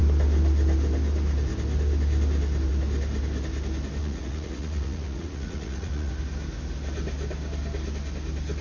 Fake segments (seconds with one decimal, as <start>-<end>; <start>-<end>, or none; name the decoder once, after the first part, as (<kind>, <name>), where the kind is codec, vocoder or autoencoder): 4.0-6.1 (vocoder, Vocos)